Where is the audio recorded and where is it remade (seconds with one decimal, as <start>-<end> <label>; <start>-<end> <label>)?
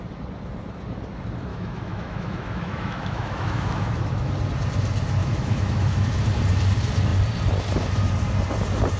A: 0.0-1.5 recorded; 1.5-4.3 remade; 4.3-5.2 recorded; 5.2-6.1 remade; 6.1-9.0 recorded